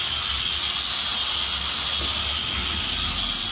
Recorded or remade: recorded